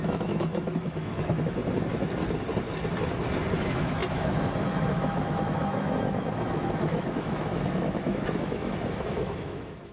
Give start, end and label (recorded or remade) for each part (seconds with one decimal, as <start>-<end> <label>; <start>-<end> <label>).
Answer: 0.0-1.6 remade; 1.6-3.5 recorded; 3.5-9.9 remade